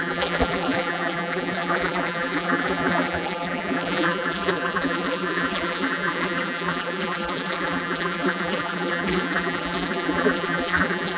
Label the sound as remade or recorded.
remade